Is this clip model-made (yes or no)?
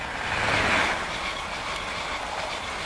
no